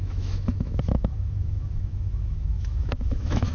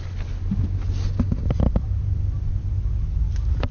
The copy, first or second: first